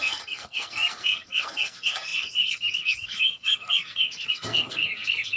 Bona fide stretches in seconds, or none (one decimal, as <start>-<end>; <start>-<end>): none